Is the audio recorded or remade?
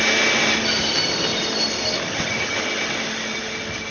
recorded